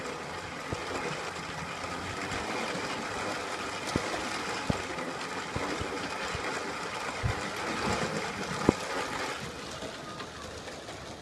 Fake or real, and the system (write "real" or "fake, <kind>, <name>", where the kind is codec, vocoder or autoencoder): real